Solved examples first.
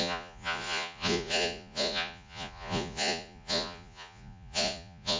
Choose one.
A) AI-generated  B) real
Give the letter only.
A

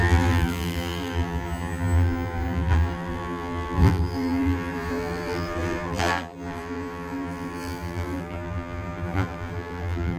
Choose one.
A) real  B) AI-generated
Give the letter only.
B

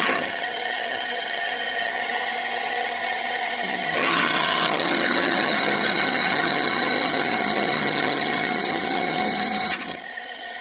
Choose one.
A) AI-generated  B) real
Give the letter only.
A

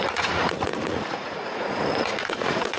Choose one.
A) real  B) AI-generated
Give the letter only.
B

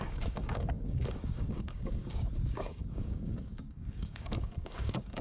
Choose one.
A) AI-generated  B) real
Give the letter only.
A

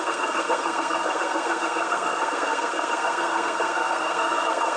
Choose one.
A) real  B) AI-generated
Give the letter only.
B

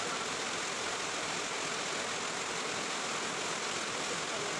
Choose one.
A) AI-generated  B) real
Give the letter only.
B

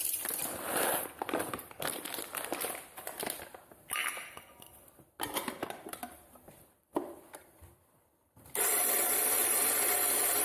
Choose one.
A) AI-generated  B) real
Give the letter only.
A